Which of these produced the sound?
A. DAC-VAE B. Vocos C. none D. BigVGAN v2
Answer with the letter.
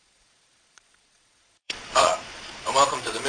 B